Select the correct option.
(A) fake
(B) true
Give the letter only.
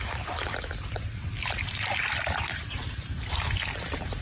B